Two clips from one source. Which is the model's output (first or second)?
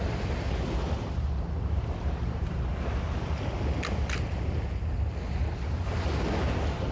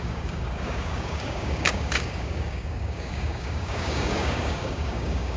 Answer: second